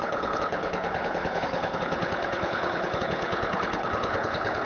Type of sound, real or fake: fake